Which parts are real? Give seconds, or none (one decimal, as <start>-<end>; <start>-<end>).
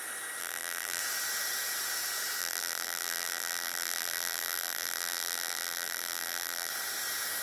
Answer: 0.0-0.4; 1.0-2.4; 6.7-7.4